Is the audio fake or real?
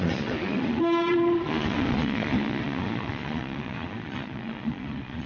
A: fake